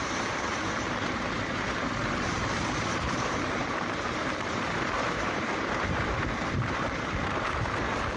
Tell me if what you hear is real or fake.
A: fake